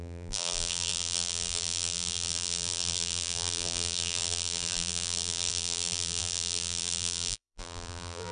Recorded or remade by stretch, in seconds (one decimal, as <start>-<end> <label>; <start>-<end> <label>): 0.0-8.3 remade